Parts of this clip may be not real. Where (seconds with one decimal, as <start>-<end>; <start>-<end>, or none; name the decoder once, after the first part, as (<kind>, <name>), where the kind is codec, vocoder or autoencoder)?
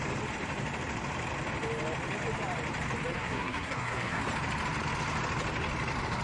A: 3.1-4.2 (codec, SNAC)